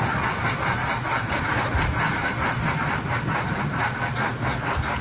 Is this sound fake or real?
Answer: real